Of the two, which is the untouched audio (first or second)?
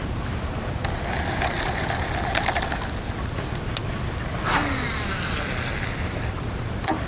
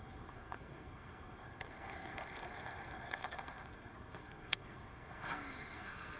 first